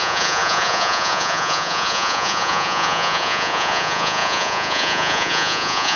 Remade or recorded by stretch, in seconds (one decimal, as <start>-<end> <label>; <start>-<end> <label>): 0.0-6.0 remade